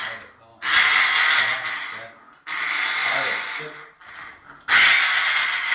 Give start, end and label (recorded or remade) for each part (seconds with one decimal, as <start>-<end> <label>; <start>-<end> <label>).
0.0-3.0 recorded; 3.0-3.6 remade; 3.6-5.7 recorded